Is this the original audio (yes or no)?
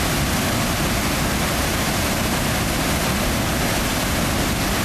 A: yes